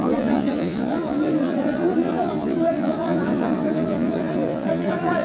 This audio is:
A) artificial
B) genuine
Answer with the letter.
A